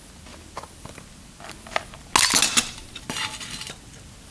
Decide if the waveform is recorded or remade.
recorded